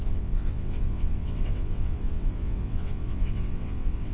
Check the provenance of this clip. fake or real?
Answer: fake